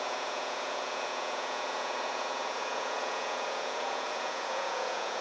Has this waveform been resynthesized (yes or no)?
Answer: yes